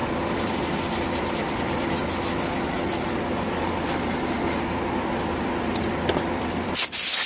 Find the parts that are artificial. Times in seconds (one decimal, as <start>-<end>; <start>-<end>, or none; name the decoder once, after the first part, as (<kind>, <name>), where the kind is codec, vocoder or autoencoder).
0.0-2.0 (vocoder, BigVGAN v2); 6.4-7.3